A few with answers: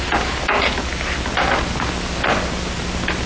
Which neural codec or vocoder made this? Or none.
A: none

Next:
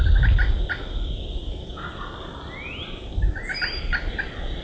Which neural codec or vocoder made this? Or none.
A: none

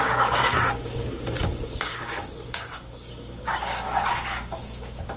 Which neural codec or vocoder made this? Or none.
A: codec, DAC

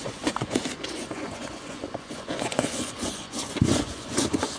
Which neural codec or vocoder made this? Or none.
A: vocoder, Vocos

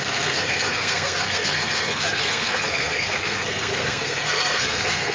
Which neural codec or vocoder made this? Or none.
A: codec, SNAC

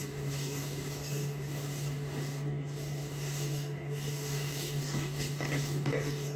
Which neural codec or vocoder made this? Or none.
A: codec, DAC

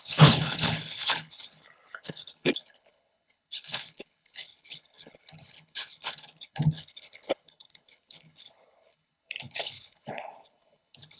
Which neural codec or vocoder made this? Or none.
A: codec, HILCodec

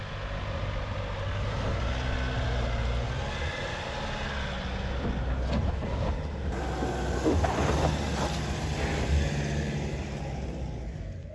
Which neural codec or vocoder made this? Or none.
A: none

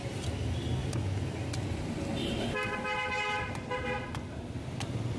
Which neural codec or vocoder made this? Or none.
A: none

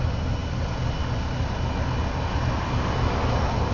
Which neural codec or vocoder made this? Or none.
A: none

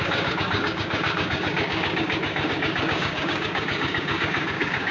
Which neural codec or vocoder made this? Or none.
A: codec, DAC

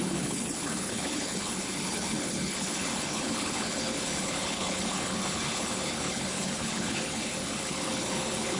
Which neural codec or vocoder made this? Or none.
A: codec, HILCodec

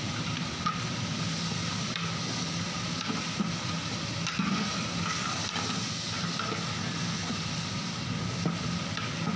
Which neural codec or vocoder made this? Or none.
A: none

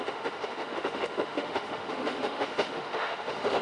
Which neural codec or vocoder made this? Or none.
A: autoencoder, DAC-VAE